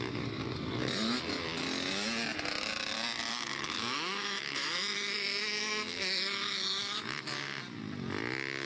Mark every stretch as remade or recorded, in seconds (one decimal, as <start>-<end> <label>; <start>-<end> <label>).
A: 0.0-3.3 recorded; 3.3-7.6 remade; 7.6-8.7 recorded